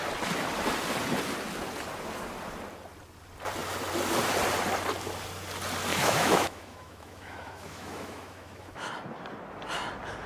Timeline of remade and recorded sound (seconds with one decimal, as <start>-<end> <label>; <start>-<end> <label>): 0.0-5.9 recorded; 5.9-8.9 remade; 8.9-10.3 recorded